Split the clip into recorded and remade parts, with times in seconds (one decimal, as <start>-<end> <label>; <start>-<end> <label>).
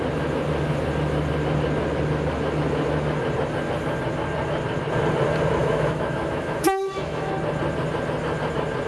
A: 0.0-5.6 recorded; 5.6-7.3 remade; 7.3-8.9 recorded